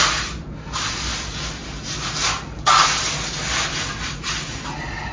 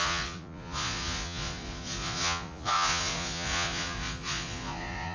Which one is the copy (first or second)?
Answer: second